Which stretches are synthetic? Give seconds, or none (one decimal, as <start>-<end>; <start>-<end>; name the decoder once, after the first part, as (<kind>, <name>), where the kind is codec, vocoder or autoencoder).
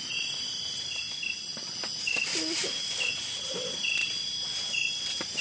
none